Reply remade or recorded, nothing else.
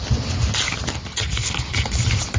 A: recorded